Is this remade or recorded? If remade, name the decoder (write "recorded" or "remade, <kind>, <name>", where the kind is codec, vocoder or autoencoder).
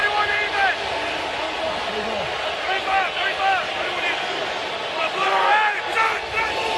recorded